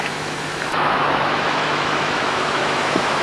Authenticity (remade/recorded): remade